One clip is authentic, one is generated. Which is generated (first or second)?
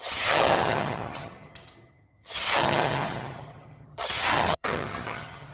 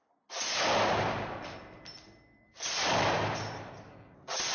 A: first